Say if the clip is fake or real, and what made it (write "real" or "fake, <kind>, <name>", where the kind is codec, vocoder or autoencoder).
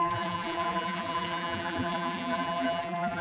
fake, vocoder, BigVGAN v2